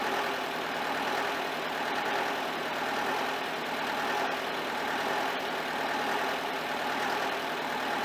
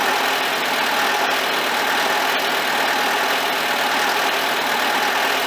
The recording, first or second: second